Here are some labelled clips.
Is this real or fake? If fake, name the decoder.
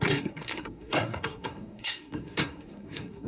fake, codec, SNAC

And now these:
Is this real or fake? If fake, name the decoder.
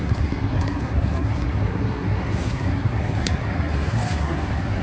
fake, codec, SNAC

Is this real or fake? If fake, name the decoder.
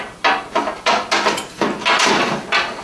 real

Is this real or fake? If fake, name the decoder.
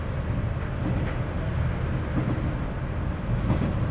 real